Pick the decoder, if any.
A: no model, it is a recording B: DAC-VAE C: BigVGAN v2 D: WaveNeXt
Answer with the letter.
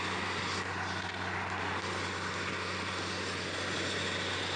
A